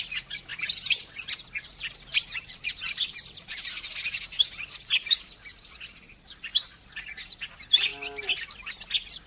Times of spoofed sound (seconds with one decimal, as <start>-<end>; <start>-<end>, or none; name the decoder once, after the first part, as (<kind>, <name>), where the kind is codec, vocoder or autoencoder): 0.5-3.7 (vocoder, BigVGAN v2); 6.5-7.5; 7.9-8.5